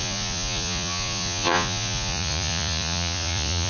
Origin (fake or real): fake